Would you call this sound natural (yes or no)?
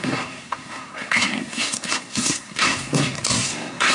no